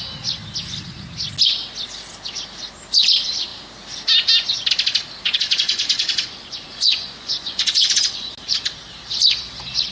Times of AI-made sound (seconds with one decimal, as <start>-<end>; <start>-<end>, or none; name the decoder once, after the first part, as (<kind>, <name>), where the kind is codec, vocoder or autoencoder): 5.2-8.3 (vocoder, Vocos)